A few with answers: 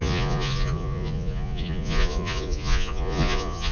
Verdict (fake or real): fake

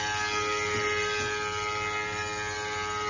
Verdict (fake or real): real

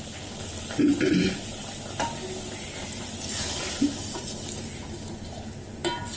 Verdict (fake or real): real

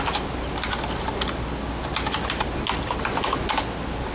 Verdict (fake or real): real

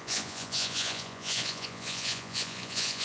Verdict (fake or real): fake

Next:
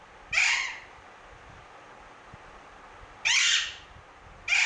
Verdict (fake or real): real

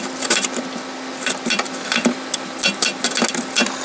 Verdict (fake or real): real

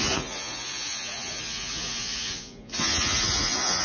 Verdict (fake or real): fake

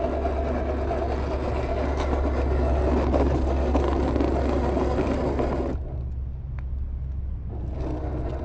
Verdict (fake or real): real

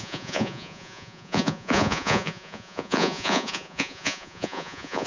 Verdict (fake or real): fake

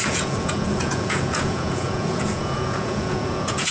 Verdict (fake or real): fake